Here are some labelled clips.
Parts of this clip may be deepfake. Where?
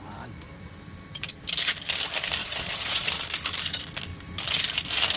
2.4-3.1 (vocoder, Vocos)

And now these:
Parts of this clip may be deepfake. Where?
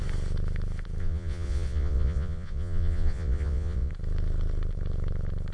1.0-3.9 (vocoder, Vocos)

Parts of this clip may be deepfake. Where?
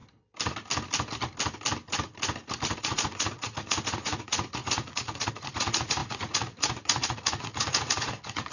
2.8-8.5 (vocoder, Vocos)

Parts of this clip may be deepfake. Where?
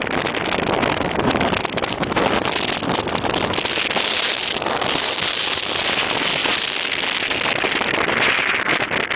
none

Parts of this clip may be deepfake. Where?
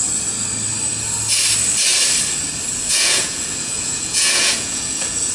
3.0-5.3 (vocoder, Vocos)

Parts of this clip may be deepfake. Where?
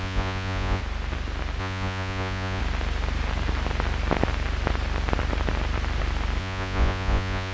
0.0-0.8 (vocoder, Vocos); 1.6-2.6; 6.4-7.5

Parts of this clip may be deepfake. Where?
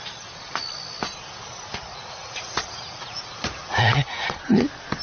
1.9-4.4 (vocoder, Vocos)